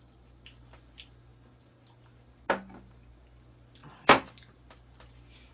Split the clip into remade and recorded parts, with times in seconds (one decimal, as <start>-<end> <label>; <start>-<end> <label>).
0.0-5.5 recorded